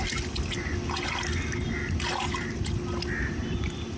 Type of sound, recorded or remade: recorded